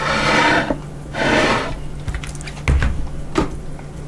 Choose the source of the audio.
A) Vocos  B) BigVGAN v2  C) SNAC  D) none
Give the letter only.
D